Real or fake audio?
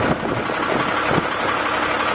real